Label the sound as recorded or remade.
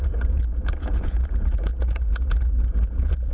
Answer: remade